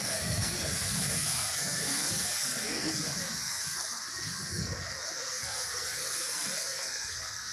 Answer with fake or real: fake